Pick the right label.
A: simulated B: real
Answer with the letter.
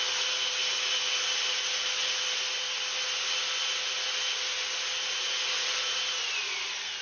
B